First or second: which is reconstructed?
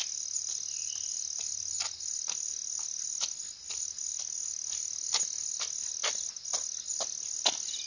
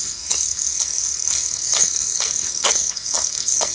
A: second